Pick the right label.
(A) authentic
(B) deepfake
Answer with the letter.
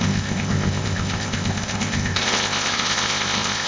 B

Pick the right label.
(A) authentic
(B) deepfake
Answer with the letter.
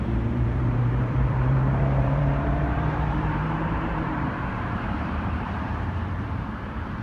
B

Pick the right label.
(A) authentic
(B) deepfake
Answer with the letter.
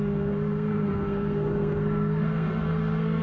B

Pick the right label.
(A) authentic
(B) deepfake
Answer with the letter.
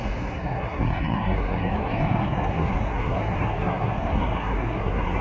B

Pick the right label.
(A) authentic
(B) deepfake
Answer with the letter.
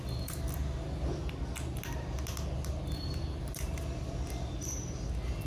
A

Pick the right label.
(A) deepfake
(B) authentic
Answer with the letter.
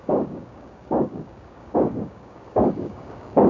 A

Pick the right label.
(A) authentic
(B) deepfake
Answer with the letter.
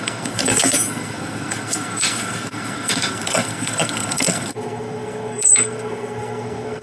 B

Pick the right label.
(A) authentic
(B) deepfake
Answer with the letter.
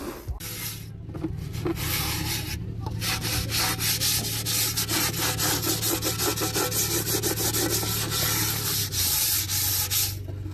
A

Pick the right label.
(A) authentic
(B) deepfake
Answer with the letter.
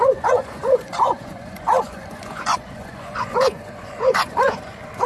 B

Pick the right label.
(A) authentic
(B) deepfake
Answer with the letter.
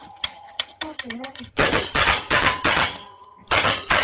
B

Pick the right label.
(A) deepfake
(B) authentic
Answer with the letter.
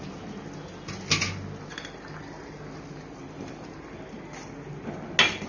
B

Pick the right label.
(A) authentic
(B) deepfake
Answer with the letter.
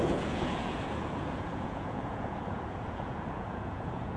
B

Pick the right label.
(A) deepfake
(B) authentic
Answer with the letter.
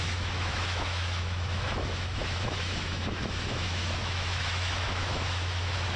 A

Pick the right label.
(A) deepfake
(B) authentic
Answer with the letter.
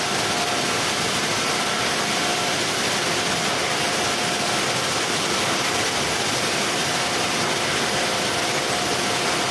B